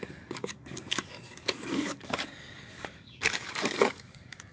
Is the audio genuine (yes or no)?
no